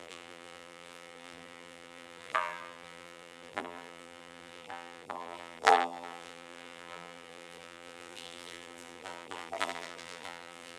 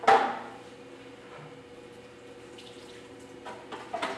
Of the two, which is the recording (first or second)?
second